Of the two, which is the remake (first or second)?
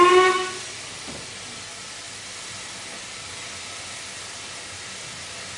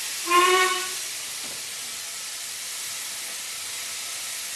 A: second